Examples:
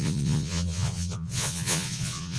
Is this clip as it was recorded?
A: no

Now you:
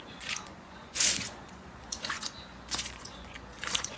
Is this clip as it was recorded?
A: no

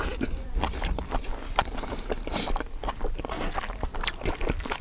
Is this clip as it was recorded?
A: yes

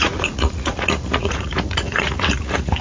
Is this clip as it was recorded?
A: no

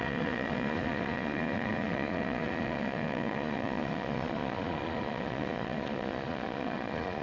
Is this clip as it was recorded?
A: no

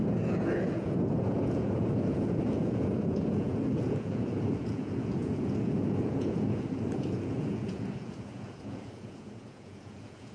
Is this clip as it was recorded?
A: no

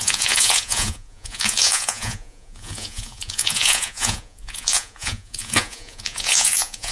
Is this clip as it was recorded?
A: no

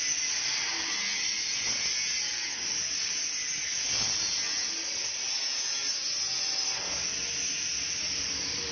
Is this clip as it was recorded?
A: yes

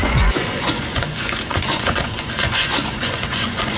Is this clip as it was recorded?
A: no